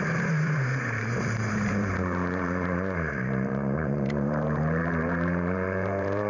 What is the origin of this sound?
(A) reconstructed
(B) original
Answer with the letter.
A